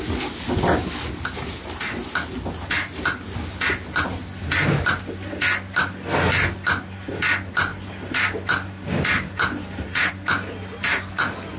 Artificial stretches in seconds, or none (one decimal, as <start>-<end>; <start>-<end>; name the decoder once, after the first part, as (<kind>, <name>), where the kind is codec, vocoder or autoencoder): none